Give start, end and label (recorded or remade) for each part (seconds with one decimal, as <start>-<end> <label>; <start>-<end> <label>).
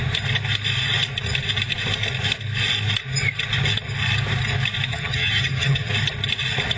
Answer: 0.0-4.9 recorded; 4.9-5.9 remade; 5.9-6.8 recorded